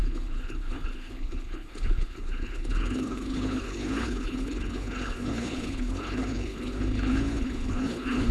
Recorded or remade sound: remade